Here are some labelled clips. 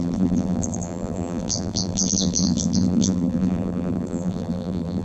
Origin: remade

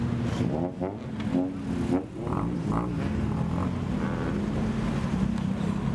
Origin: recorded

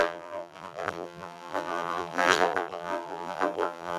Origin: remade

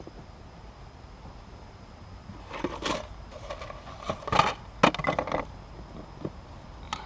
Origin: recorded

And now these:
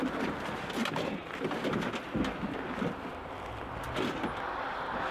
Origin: recorded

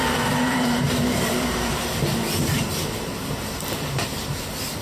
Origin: remade